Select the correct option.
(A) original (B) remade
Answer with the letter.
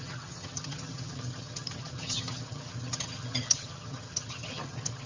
B